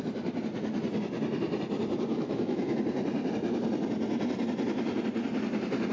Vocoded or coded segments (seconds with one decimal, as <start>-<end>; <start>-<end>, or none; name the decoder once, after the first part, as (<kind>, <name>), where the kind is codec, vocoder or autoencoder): 2.1-2.8 (autoencoder, DAC-VAE)

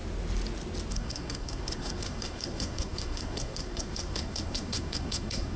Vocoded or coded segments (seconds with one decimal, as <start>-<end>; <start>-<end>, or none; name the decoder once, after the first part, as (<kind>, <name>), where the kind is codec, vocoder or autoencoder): 0.9-5.6 (codec, SNAC)

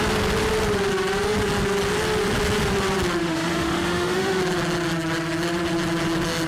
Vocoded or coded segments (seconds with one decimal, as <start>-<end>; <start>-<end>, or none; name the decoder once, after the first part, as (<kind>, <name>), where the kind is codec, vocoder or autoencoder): 3.2-4.4 (autoencoder, DAC-VAE)

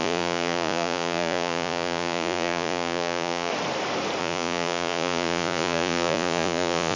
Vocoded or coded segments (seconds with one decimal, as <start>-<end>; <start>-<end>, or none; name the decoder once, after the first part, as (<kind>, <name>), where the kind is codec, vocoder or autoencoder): 0.0-3.5 (vocoder, Vocos); 4.2-7.0

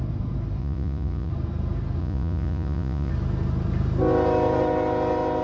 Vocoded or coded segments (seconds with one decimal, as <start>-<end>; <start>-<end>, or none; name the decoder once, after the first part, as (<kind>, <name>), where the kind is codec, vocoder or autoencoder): 0.6-1.3 (vocoder, Vocos); 2.0-3.1

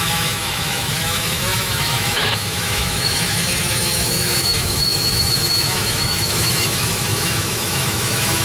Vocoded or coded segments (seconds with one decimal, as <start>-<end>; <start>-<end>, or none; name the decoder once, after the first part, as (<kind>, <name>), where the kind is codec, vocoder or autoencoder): 0.0-8.4 (autoencoder, DAC-VAE)